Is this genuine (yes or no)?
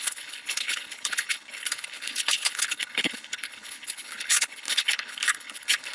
no